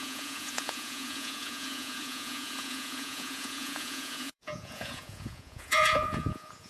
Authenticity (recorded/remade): remade